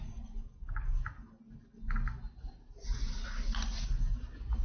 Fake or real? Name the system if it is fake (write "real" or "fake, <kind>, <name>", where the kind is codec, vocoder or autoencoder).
real